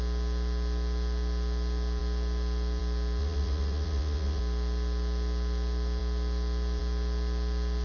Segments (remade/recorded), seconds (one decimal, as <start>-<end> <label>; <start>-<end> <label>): 0.0-3.2 recorded; 3.2-4.4 remade; 4.4-7.8 recorded